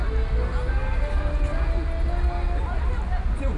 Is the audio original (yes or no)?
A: yes